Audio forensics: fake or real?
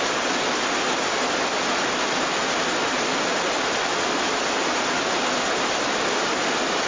real